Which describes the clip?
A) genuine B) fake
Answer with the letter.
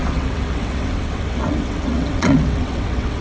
B